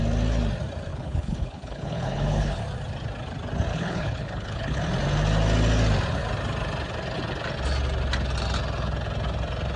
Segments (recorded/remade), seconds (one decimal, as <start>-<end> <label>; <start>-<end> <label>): 0.0-0.9 recorded; 0.9-2.6 remade; 2.6-3.7 recorded; 3.7-4.8 remade; 4.8-9.8 recorded